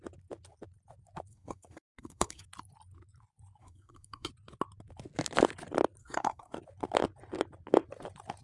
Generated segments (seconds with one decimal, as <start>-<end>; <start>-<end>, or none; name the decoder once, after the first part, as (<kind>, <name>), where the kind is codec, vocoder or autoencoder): 1.3-2.4 (codec, SNAC); 3.6-4.3; 6.0-6.6